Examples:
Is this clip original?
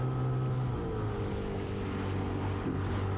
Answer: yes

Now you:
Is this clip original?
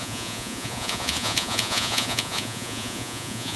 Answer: no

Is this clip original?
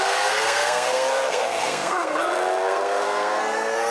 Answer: no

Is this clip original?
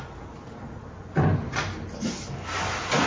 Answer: yes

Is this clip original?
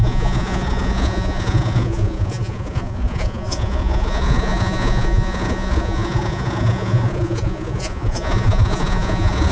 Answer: no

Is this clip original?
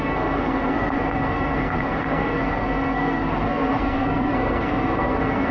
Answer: no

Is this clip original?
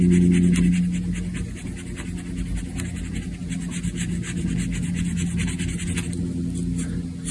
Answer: yes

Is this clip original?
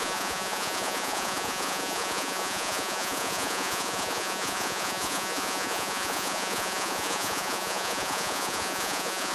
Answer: no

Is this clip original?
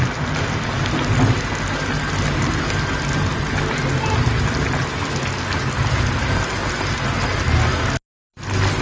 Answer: yes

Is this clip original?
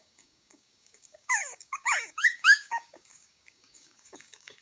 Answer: no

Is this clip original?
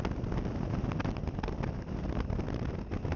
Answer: yes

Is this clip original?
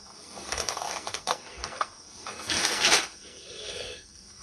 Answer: no